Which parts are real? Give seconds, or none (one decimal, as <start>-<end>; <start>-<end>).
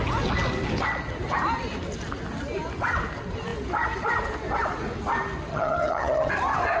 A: 0.0-5.5; 6.3-6.8